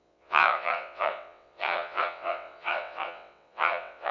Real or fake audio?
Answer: fake